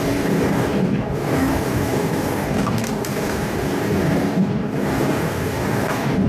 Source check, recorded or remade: remade